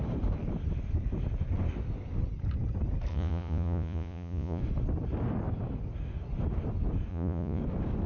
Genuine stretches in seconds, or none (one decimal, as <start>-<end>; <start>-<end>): 0.0-3.1; 4.6-7.1; 7.6-8.1